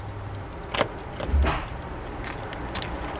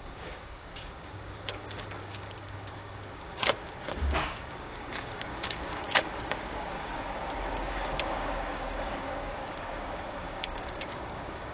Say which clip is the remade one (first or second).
second